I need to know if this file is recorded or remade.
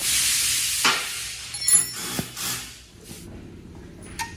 recorded